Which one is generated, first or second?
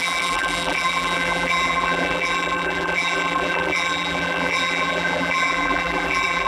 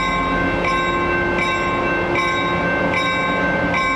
first